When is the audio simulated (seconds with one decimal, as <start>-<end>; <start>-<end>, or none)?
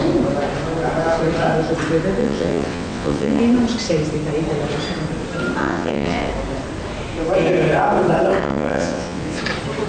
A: 2.2-3.4; 5.6-6.3; 8.4-9.4